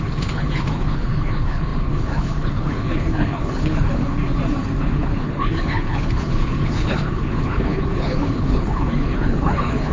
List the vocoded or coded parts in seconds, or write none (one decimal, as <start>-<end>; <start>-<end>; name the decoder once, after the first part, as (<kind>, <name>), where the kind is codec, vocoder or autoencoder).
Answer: 0.0-4.2 (codec, HILCodec); 4.8-9.9

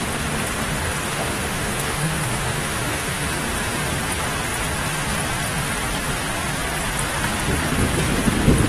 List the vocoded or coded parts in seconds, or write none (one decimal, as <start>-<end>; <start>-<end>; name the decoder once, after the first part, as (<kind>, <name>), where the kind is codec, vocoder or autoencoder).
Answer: 1.0-3.9 (autoencoder, DAC-VAE)